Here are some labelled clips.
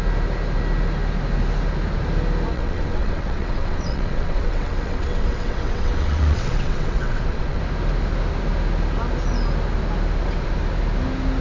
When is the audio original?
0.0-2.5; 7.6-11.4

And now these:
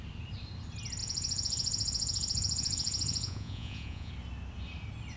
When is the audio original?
0.0-1.0; 4.1-5.2

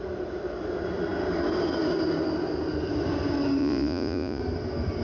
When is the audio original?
0.0-3.6; 4.4-5.0

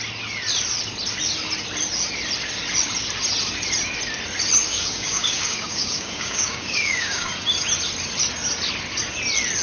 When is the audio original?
0.0-4.7; 7.3-9.6

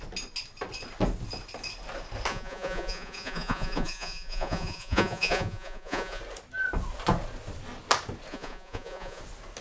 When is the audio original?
0.0-2.3; 6.2-8.3; 9.2-9.6

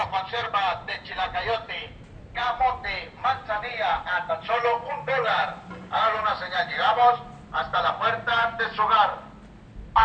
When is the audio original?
0.0-10.0

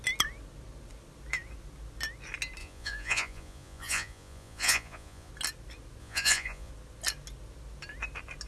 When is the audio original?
0.0-2.6; 5.3-6.0; 6.7-8.5